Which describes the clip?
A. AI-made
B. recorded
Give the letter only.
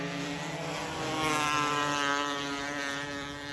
B